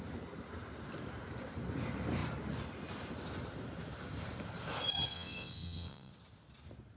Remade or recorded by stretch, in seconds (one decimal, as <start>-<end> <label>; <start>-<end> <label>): 0.0-5.1 recorded; 5.1-6.1 remade; 6.1-7.0 recorded